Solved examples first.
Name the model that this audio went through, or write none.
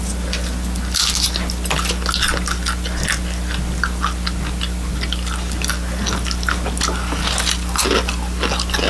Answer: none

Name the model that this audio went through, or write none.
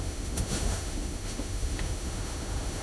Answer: autoencoder, DAC-VAE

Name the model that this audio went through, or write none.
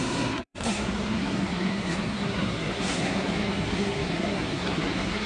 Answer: codec, SNAC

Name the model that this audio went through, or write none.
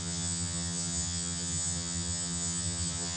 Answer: vocoder, HiFi-GAN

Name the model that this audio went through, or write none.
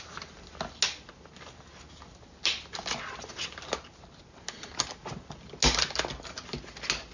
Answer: none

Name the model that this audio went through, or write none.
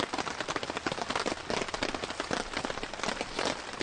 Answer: none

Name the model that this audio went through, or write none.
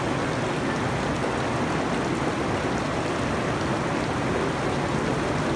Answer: none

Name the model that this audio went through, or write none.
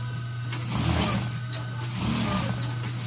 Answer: none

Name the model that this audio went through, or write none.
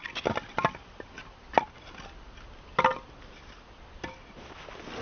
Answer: none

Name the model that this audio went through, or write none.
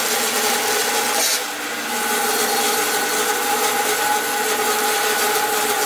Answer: none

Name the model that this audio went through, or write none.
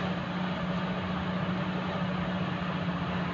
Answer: none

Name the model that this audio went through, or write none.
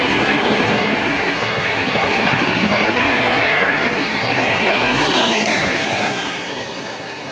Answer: codec, SNAC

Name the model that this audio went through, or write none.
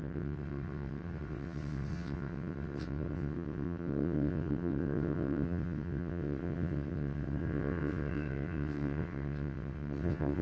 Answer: vocoder, WaveNeXt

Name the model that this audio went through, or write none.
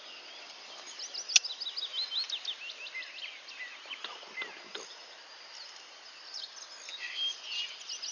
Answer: none